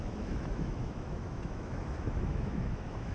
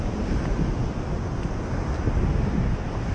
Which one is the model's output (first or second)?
first